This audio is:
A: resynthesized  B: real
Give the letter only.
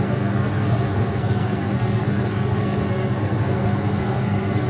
A